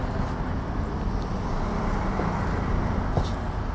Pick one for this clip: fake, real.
real